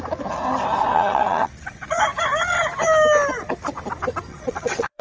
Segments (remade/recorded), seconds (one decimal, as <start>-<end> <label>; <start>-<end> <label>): 0.0-0.9 recorded; 0.9-2.0 remade; 2.0-4.3 recorded; 4.3-5.0 remade

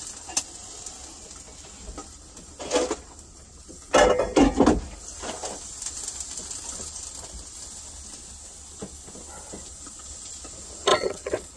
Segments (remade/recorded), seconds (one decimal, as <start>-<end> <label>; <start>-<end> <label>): 0.0-10.9 recorded; 10.9-11.6 remade

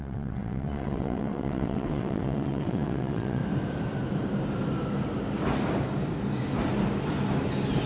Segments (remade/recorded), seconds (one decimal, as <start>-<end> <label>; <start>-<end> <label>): 0.0-3.4 remade; 3.4-7.9 recorded